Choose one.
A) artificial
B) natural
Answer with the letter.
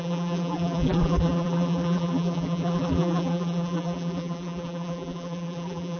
A